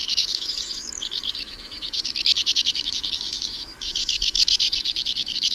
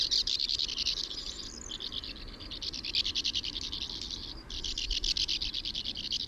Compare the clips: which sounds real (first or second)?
second